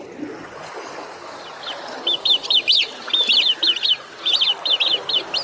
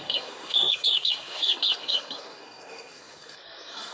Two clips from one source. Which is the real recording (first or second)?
first